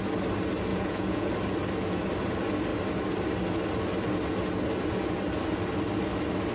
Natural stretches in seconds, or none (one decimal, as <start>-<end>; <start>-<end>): 0.0-0.7; 1.3-6.5